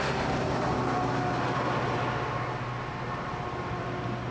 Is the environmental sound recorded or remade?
recorded